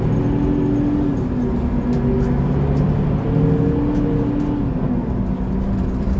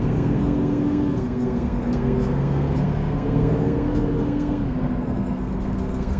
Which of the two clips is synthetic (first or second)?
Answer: second